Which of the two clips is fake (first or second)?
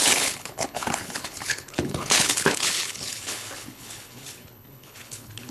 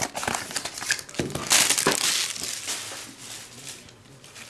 first